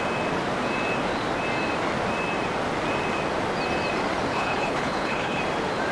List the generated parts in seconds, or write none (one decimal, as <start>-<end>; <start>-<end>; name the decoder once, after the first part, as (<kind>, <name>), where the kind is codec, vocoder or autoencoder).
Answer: 4.3-5.4 (codec, HILCodec)